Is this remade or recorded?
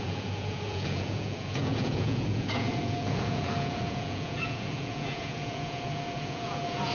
remade